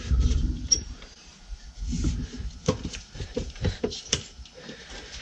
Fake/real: fake